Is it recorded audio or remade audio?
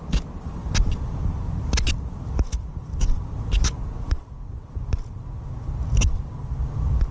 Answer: recorded